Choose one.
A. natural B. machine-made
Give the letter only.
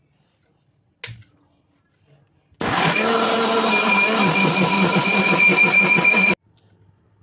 A